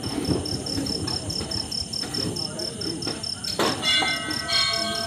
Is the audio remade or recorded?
recorded